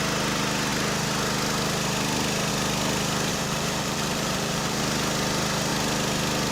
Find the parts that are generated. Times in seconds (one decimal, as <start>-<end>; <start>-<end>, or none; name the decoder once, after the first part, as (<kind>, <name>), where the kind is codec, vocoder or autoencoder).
3.3-4.8 (vocoder, BigVGAN v2)